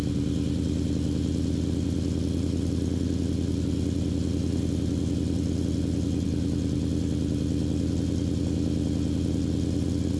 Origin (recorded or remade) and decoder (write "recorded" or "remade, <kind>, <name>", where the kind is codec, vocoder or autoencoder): recorded